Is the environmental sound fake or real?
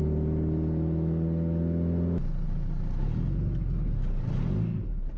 real